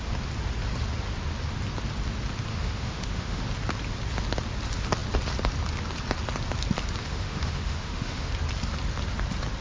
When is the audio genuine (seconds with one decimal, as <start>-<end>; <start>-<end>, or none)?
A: 0.0-2.5; 3.4-7.0; 8.3-9.6